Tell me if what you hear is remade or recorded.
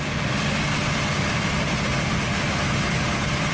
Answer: recorded